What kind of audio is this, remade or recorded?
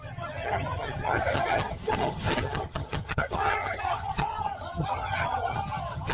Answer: remade